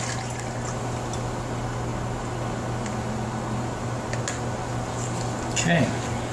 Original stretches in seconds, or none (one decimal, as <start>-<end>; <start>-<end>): 0.0-6.3